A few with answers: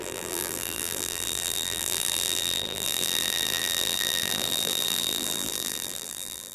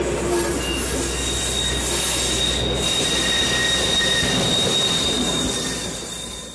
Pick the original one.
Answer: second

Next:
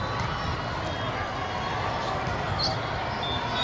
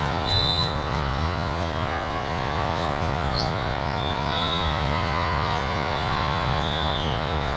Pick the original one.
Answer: first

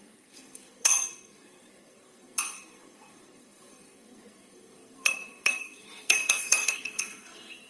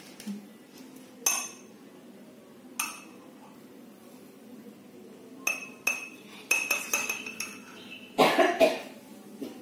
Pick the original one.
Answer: second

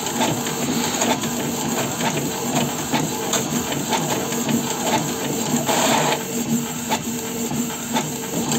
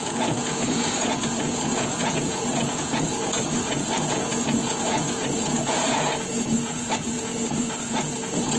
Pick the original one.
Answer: first